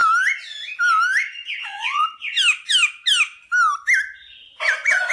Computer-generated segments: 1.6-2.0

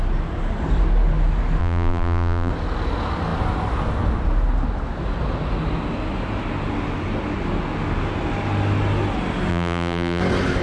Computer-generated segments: 1.6-2.5; 9.5-10.2

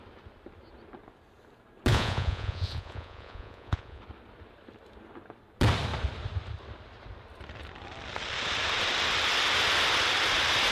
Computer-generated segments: 1.9-4.0

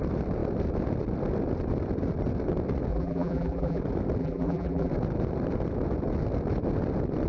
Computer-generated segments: 2.9-3.8; 4.2-4.9

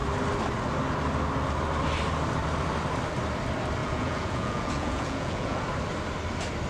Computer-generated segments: 3.8-5.6

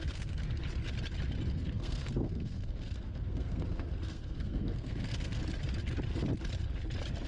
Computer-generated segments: 0.0-0.4; 1.5-5.4

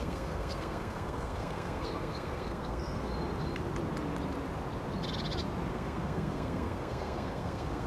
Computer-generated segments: 0.0-3.1; 5.7-7.9